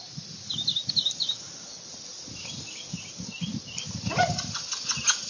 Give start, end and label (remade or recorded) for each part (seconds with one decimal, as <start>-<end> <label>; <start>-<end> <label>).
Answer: 0.0-5.3 recorded